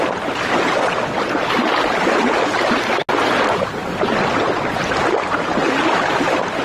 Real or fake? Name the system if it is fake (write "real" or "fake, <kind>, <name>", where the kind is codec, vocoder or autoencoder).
real